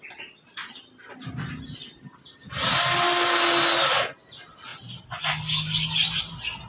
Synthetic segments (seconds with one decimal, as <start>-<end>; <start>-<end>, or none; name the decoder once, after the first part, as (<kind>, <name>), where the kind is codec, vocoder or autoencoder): none